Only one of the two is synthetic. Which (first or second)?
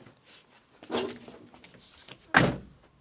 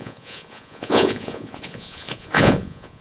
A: second